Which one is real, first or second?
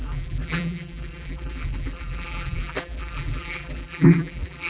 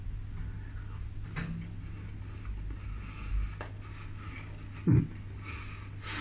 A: second